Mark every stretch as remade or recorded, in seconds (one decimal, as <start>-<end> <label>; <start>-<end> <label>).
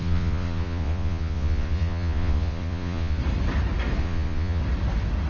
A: 0.0-3.2 remade; 3.2-4.0 recorded; 4.0-4.6 remade; 4.6-5.3 recorded